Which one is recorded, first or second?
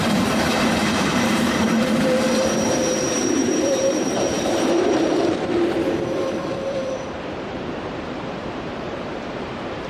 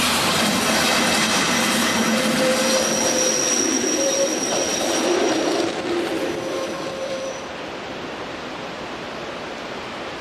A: second